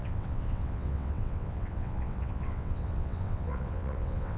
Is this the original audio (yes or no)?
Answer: no